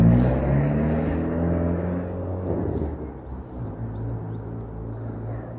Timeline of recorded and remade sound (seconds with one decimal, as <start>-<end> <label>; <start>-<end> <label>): 0.0-5.6 recorded